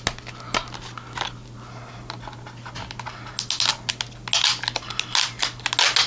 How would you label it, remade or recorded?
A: recorded